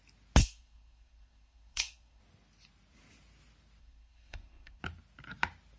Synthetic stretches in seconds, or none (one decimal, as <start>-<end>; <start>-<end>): 0.4-2.2; 3.8-4.8